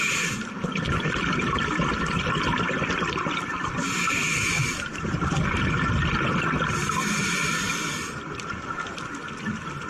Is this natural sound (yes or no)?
yes